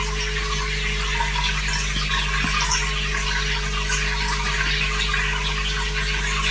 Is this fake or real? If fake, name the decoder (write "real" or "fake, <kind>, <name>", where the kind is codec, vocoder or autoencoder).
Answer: real